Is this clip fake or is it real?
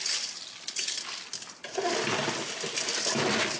real